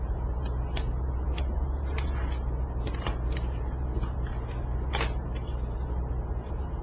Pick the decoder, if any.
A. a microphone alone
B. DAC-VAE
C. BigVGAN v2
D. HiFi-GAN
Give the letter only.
C